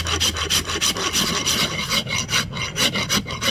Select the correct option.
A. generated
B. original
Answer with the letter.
B